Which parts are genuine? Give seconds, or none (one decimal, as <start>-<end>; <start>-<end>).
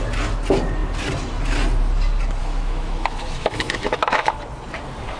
0.0-2.4; 4.4-5.2